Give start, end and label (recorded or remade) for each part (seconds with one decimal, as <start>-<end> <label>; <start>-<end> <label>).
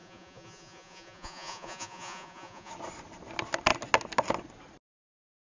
0.0-2.7 remade; 2.7-5.4 recorded